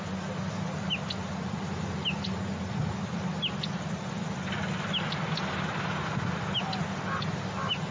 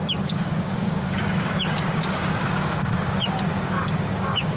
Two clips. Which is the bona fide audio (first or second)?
first